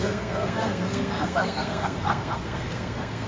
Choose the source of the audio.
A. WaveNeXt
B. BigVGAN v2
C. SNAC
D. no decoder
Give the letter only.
C